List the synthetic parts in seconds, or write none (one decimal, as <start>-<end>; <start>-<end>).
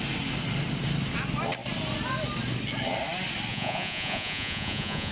3.5-5.1